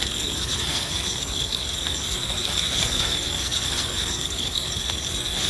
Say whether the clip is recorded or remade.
remade